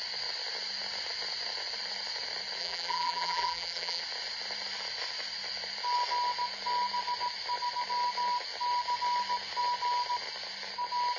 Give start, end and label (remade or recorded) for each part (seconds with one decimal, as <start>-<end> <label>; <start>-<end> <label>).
0.0-2.6 recorded; 2.6-4.0 remade; 4.0-11.2 recorded

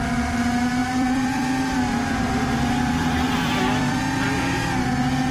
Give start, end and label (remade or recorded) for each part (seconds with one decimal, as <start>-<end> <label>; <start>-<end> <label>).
0.0-0.8 recorded; 0.8-4.0 remade; 4.0-5.3 recorded